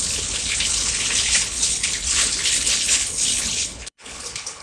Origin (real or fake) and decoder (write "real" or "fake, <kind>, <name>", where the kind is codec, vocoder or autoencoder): fake, codec, HILCodec